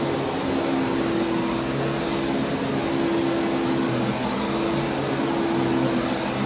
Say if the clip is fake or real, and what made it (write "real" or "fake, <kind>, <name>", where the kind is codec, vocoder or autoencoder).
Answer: real